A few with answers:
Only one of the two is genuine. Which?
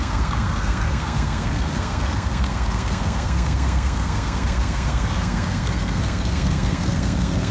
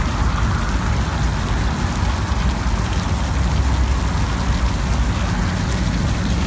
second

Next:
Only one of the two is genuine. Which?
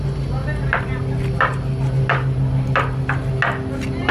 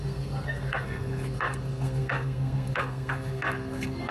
first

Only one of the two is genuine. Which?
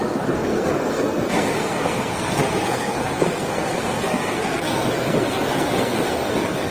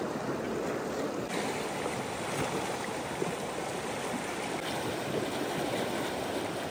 second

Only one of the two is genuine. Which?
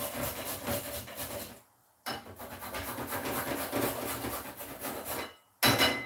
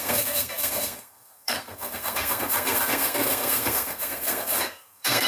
first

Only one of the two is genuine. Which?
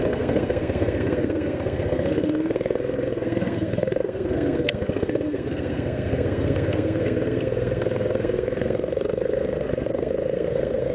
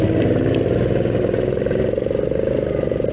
second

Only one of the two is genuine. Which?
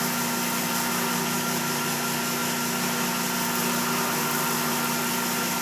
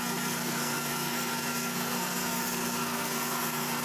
first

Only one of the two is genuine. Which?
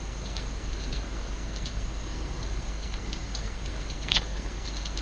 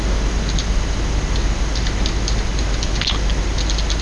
second